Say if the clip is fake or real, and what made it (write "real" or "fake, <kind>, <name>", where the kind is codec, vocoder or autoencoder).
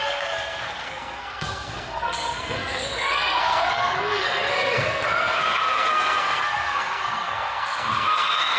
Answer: fake, codec, SNAC